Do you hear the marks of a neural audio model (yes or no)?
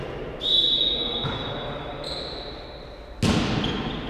no